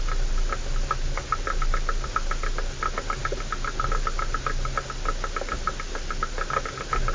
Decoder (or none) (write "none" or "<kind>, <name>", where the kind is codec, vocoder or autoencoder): none